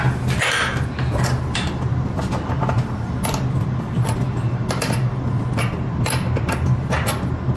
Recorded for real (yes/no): yes